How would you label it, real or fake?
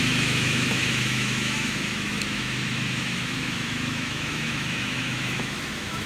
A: fake